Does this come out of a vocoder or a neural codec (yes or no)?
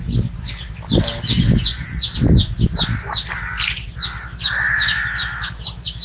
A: no